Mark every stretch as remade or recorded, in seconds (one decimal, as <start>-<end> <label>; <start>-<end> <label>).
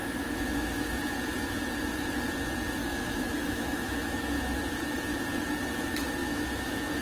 0.0-1.0 remade; 1.0-2.8 recorded; 2.8-4.6 remade; 4.6-6.2 recorded; 6.2-7.0 remade